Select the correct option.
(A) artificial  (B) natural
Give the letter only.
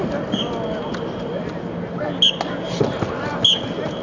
B